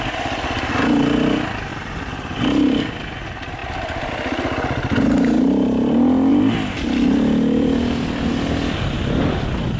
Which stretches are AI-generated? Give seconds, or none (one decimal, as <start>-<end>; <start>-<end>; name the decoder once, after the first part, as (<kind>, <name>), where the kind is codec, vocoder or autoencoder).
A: 1.7-2.4 (vocoder, BigVGAN v2); 3.6-4.1; 6.3-8.3

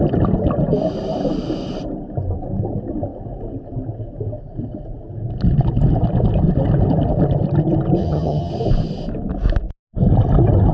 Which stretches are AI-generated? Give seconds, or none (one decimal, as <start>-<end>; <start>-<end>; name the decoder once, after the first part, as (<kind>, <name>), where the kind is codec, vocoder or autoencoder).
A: 8.0-8.5 (vocoder, HiFi-GAN)

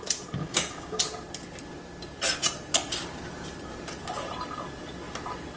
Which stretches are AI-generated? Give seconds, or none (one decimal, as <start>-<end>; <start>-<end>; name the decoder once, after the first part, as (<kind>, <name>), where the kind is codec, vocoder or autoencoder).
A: 0.4-1.0 (codec, DAC)

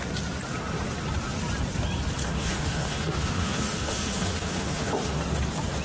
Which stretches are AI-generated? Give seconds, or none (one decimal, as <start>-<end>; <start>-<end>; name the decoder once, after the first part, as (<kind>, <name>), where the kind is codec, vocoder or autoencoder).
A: 2.2-5.2 (autoencoder, DAC-VAE)

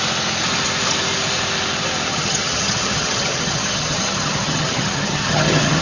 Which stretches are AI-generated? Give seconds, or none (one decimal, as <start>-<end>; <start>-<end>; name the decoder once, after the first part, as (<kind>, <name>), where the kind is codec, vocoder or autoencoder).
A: 2.1-5.8 (vocoder, HiFi-GAN)

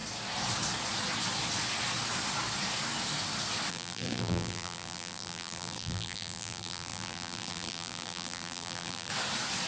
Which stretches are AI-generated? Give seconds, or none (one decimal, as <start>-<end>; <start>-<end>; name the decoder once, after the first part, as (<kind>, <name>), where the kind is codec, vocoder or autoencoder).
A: 3.7-9.1 (vocoder, BigVGAN v2)